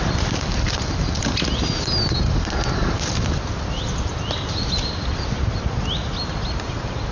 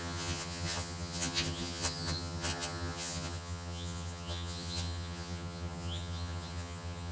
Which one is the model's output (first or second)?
second